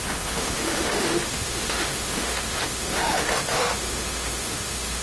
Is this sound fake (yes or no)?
yes